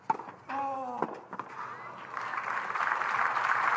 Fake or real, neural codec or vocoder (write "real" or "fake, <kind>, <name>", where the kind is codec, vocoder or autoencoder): real